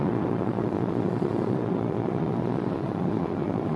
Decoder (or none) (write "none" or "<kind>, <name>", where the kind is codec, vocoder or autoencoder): vocoder, Vocos